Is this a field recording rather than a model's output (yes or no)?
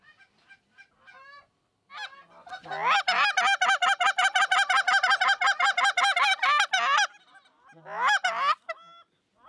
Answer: yes